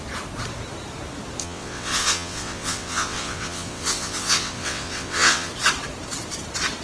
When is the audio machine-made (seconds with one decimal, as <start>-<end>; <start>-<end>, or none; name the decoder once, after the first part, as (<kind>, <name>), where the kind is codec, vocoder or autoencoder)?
1.4-5.5 (vocoder, WaveNeXt)